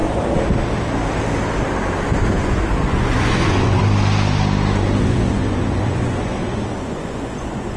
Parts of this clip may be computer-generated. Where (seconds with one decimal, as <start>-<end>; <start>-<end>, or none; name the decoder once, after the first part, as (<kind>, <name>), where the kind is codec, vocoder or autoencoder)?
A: 2.4-3.8 (vocoder, Vocos); 5.0-7.8